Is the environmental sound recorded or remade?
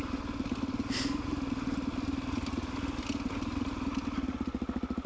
recorded